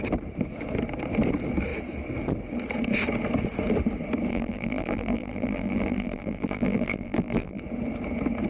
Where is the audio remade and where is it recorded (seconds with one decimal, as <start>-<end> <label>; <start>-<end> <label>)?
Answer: 0.0-4.3 recorded; 4.3-7.6 remade; 7.6-8.5 recorded